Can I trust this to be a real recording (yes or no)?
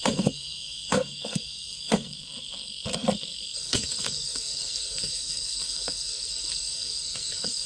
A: no